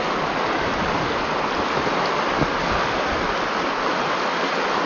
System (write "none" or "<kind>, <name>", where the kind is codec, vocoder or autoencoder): none